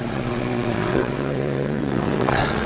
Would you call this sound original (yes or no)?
no